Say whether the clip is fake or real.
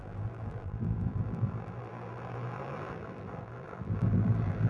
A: fake